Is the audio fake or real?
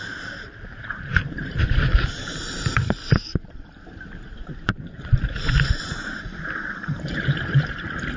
fake